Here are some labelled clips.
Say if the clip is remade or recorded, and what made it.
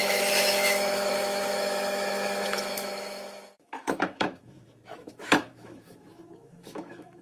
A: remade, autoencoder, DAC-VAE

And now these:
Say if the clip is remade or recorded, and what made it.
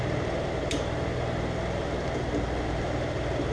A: remade, vocoder, BigVGAN v2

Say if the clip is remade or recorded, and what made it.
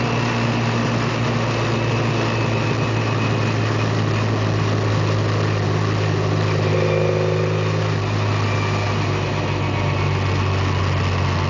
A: recorded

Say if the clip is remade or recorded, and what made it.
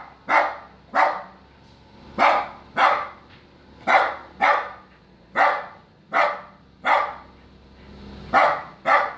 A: recorded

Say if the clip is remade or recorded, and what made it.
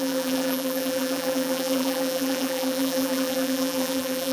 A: remade, vocoder, BigVGAN v2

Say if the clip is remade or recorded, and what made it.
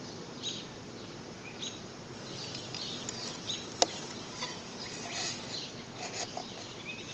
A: recorded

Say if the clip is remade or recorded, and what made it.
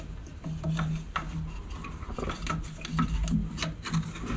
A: recorded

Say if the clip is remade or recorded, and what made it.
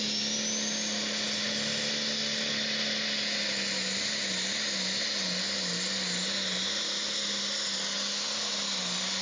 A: recorded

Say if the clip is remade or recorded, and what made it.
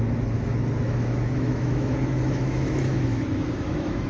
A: remade, autoencoder, DAC-VAE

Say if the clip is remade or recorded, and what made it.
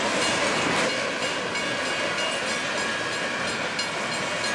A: recorded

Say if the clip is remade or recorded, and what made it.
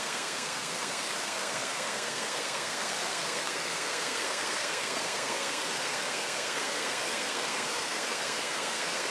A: remade, codec, SNAC